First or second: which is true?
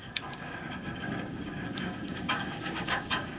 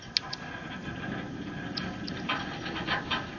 second